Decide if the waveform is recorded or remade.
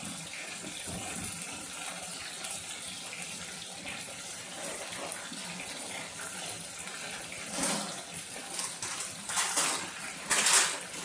recorded